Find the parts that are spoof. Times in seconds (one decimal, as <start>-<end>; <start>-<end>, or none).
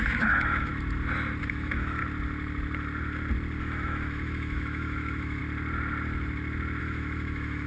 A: 0.0-0.7; 1.4-2.0; 3.6-5.4; 6.8-7.7